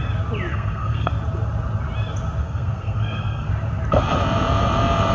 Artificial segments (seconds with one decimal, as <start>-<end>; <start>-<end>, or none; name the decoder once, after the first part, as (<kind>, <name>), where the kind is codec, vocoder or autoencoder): 0.5-1.1 (codec, SNAC); 2.4-3.5